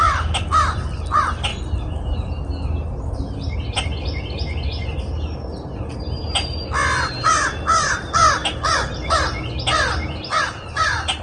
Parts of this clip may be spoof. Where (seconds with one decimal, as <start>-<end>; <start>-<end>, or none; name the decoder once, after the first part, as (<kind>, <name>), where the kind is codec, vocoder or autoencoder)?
none